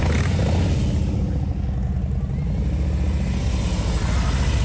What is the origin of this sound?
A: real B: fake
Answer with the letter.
A